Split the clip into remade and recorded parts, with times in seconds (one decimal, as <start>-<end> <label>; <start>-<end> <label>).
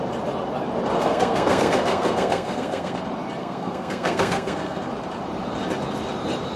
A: 0.0-1.0 recorded; 1.0-3.0 remade; 3.0-3.4 recorded; 3.4-4.9 remade; 4.9-6.6 recorded